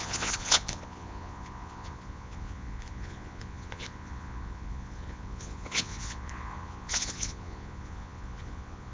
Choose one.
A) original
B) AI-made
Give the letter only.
B